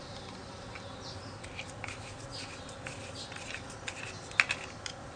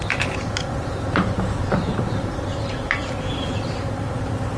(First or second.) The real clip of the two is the first